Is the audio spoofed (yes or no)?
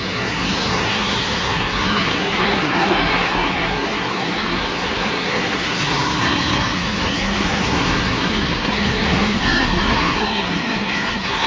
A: yes